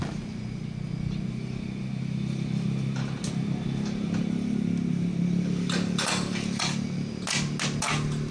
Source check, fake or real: real